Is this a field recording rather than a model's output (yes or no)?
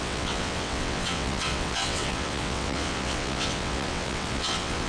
no